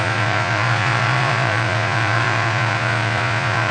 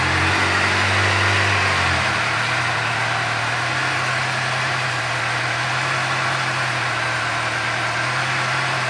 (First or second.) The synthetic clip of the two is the first